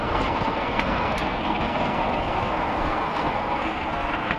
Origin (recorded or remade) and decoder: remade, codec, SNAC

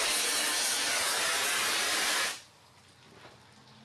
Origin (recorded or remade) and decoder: recorded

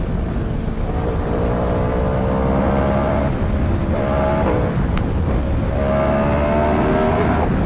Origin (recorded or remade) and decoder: recorded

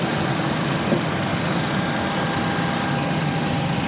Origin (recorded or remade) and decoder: recorded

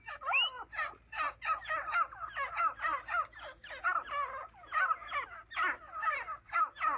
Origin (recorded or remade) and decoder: recorded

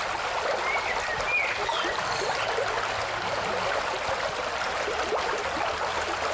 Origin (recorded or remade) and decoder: recorded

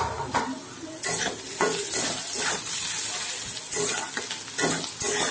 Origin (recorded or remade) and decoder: recorded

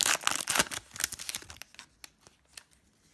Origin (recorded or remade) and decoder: recorded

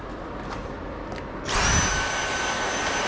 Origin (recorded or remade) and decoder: recorded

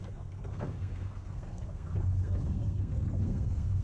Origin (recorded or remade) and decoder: remade, codec, SNAC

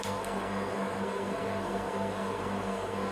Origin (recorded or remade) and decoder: remade, codec, SNAC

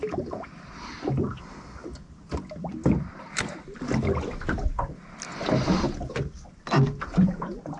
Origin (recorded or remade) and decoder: recorded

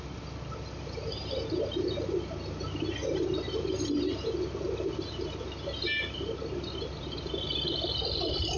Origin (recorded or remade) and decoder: recorded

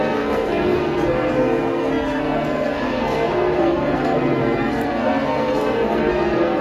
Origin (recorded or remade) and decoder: remade, codec, SNAC